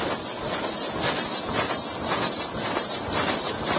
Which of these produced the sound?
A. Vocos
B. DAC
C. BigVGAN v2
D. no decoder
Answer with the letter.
D